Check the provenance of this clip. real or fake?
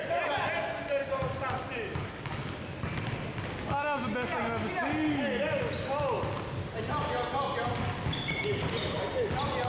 real